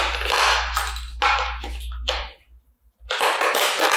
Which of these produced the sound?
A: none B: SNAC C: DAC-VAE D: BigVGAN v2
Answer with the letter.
A